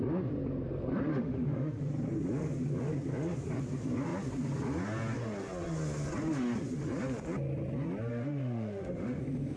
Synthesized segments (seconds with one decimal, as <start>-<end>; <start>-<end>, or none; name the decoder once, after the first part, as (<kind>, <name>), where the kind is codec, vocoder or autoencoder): 1.1-1.8 (autoencoder, DAC-VAE); 8.1-9.2